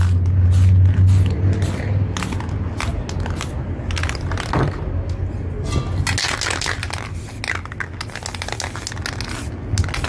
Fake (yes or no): no